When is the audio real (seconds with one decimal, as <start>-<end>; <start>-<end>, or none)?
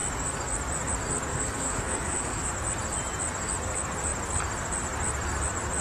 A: 0.0-1.3; 2.5-5.8